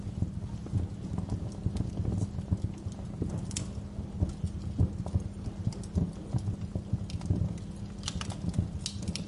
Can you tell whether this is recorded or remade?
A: recorded